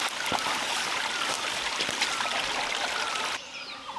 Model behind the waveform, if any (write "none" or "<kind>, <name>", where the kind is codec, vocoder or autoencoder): none